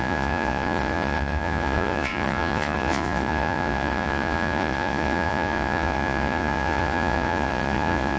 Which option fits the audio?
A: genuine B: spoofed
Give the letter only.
B